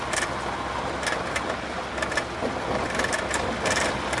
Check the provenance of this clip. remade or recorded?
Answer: recorded